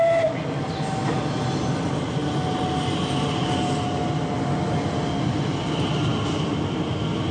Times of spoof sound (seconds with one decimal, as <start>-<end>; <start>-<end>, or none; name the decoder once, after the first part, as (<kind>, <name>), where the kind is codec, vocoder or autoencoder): none